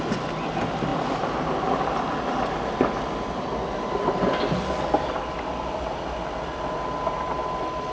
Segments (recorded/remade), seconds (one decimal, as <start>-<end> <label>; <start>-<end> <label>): 0.0-7.9 recorded